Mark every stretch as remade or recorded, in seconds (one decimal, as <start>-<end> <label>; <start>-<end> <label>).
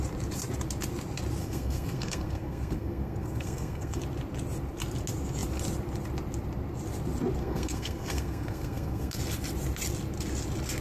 0.0-1.4 recorded; 1.4-4.0 remade; 4.0-7.4 recorded; 7.4-9.2 remade; 9.2-10.8 recorded